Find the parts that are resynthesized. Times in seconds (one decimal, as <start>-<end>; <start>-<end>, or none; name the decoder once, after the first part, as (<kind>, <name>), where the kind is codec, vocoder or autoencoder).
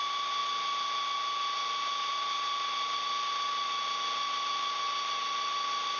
none